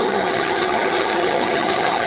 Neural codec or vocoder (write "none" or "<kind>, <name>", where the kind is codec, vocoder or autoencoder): vocoder, HiFi-GAN